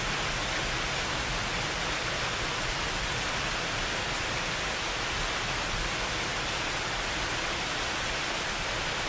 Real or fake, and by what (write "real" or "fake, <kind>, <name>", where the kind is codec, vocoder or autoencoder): real